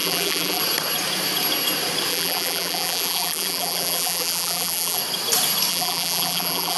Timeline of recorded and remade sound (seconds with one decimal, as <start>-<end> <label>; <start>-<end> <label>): 0.0-0.6 remade; 0.6-2.1 recorded; 2.1-5.0 remade; 5.0-5.7 recorded; 5.7-6.8 remade